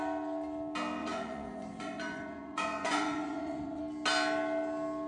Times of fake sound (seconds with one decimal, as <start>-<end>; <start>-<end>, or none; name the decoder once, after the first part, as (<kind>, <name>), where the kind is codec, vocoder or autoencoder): 1.0-3.8 (vocoder, Vocos)